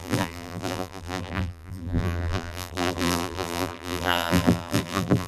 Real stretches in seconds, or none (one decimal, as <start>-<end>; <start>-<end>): none